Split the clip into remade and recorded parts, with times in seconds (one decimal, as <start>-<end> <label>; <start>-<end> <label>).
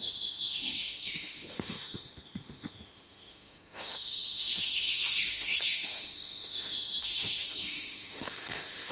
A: 0.0-8.9 remade